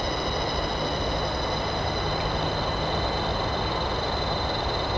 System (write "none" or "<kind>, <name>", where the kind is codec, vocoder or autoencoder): none